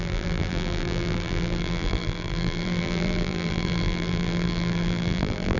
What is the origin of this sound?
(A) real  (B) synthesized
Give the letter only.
B